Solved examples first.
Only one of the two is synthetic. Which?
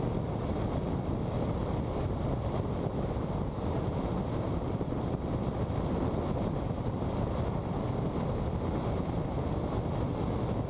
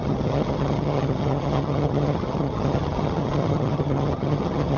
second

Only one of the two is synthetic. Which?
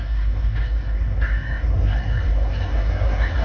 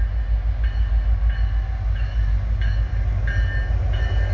first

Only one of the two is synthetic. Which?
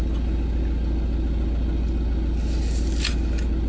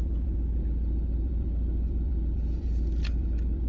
second